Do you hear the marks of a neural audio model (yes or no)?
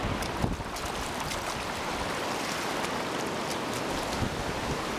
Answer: no